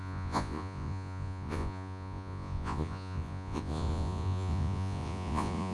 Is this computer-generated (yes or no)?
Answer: yes